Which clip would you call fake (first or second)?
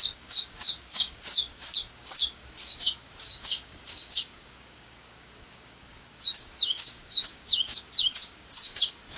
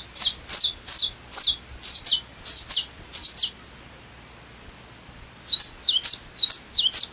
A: first